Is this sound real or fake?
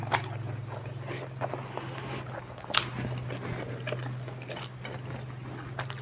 real